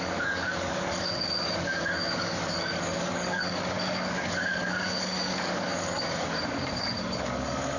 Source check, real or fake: fake